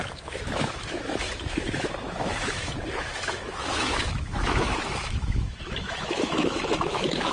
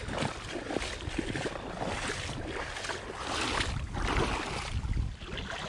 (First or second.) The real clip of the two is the second